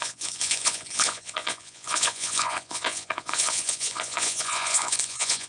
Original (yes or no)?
no